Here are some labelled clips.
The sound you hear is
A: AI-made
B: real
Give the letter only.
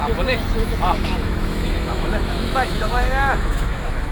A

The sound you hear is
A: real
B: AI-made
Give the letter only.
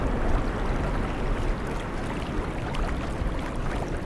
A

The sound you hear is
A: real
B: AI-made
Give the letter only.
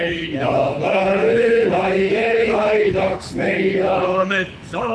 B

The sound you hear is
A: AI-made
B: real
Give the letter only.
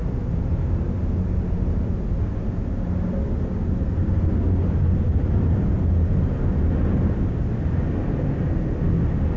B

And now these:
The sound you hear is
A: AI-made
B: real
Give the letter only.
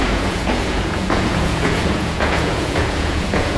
A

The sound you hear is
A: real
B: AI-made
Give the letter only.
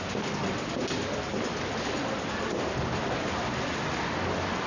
A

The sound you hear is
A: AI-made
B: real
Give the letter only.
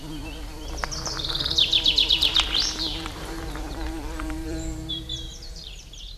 A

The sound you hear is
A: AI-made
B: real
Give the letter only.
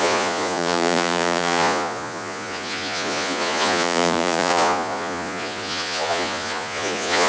A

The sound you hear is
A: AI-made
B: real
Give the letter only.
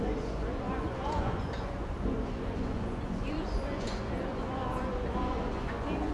A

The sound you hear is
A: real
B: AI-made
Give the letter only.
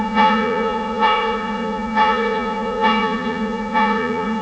B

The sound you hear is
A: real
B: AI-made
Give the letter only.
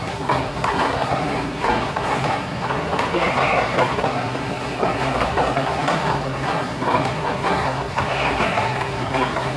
B